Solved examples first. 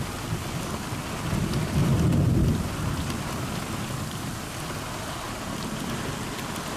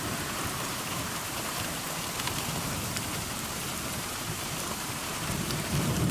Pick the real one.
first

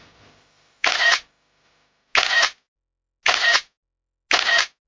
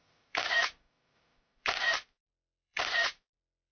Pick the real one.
first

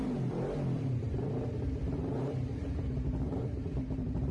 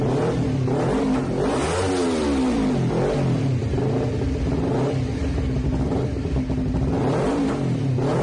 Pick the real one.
second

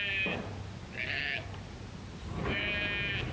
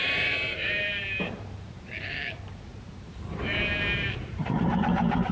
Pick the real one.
first